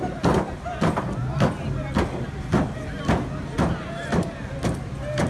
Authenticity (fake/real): real